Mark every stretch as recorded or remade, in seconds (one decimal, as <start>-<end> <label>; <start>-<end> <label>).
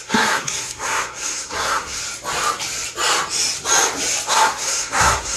0.0-2.0 remade; 2.0-4.3 recorded; 4.3-5.4 remade